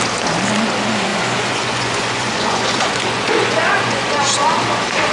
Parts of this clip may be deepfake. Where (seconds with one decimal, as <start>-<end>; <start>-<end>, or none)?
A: 1.1-4.2